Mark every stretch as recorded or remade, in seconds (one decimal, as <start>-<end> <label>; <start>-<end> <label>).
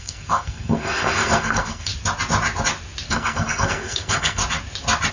0.0-1.9 remade; 1.9-3.1 recorded; 3.1-4.4 remade; 4.4-5.1 recorded